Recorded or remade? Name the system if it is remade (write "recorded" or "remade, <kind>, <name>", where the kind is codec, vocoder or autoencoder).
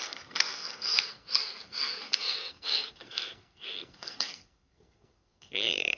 remade, codec, SNAC